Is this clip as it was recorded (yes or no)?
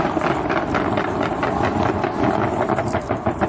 yes